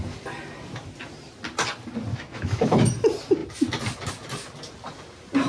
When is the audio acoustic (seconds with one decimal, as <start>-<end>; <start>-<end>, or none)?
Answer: 0.0-2.1; 2.9-5.5